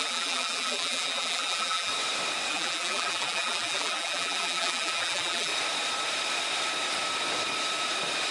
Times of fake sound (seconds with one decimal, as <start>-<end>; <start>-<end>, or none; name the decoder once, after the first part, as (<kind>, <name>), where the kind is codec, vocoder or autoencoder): 0.0-1.9 (vocoder, BigVGAN v2); 2.5-5.5